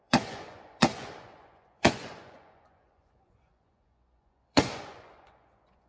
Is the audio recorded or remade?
remade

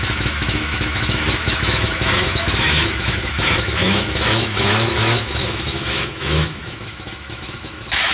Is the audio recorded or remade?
remade